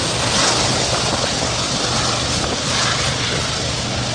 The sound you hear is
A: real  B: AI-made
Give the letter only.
A